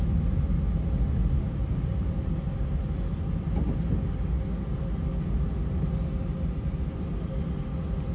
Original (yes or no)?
yes